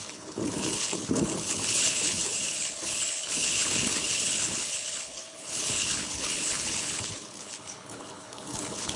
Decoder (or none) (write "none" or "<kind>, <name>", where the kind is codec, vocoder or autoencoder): codec, HILCodec